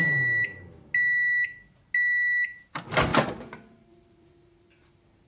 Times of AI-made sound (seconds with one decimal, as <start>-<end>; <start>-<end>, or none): 3.1-5.3